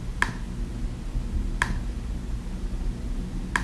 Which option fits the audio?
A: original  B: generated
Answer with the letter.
A